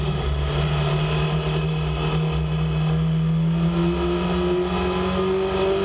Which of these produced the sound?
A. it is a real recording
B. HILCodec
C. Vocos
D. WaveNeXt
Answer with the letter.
A